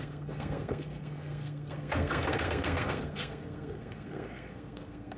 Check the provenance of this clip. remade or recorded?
remade